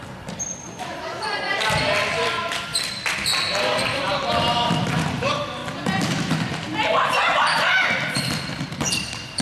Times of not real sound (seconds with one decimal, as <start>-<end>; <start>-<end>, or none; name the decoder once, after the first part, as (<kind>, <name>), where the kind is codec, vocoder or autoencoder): 0.0-5.6 (vocoder, BigVGAN v2); 8.1-9.4

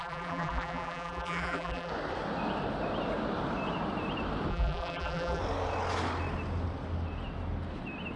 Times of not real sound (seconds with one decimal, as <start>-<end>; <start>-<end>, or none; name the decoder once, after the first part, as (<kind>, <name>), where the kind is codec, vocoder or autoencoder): 0.0-1.9 (vocoder, BigVGAN v2); 4.5-5.4

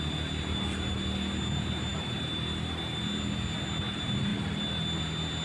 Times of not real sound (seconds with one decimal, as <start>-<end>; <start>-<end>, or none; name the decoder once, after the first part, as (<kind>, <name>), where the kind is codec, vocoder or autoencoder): 1.9-3.0 (vocoder, BigVGAN v2); 4.3-5.0